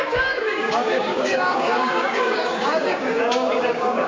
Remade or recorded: remade